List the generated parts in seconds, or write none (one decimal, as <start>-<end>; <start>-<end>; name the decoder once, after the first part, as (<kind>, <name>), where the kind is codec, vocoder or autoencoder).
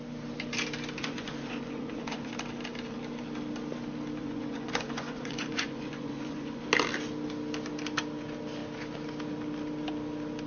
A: 1.0-2.3 (vocoder, Vocos); 4.2-6.6